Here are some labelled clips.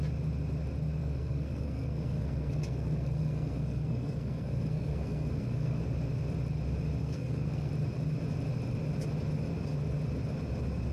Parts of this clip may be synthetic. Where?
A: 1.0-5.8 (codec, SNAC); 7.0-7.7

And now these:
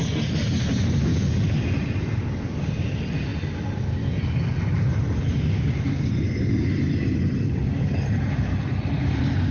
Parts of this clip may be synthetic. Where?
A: 5.5-6.1 (codec, DAC)

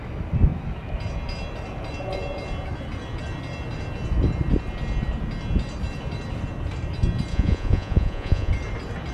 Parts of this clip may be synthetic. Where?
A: 7.3-8.5 (vocoder, Vocos)

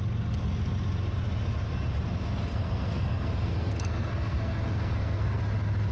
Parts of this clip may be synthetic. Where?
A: 2.5-5.4 (codec, SNAC)